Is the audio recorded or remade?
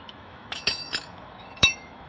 remade